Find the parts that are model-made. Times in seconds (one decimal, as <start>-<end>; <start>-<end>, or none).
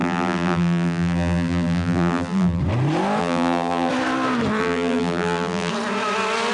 0.0-2.6; 3.2-3.9; 4.6-5.7